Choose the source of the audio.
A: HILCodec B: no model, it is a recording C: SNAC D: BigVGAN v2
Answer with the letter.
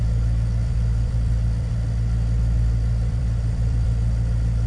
D